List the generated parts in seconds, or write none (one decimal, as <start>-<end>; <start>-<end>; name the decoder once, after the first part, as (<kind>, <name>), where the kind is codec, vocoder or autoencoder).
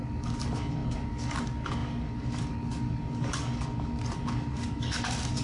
0.0-5.4 (codec, DAC)